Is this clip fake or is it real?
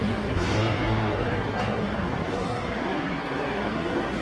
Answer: fake